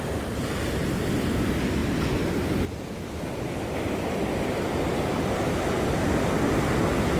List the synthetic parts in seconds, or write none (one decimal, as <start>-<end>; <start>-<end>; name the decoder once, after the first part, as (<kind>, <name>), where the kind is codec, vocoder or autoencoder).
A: none